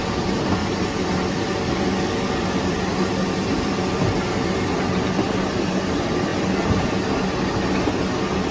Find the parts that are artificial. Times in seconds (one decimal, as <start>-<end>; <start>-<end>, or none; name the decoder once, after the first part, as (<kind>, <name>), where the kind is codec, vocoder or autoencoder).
0.6-4.3 (vocoder, BigVGAN v2); 6.3-6.9